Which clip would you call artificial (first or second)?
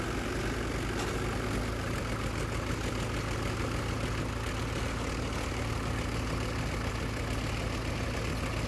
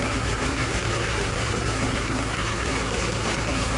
second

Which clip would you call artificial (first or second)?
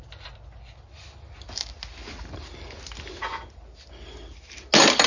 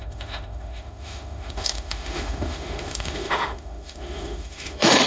second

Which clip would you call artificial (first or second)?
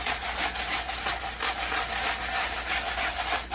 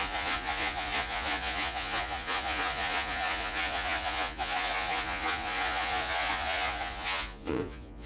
second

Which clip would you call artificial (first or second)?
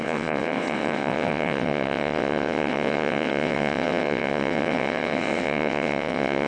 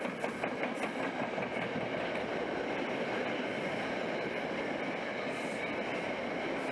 first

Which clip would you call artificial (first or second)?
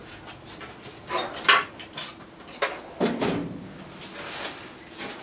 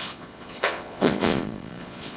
second